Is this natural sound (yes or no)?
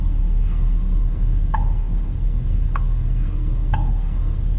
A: no